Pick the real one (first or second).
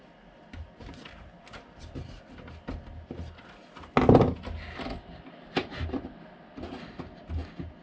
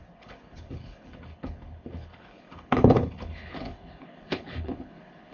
first